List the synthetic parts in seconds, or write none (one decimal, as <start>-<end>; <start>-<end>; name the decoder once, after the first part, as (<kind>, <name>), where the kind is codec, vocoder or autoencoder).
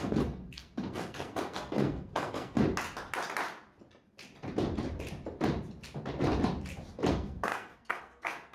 0.0-2.6 (codec, SNAC); 7.1-8.5